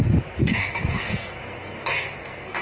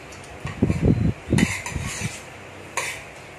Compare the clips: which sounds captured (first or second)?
second